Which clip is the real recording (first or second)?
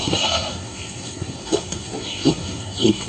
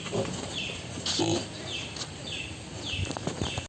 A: second